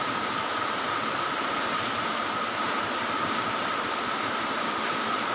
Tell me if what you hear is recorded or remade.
remade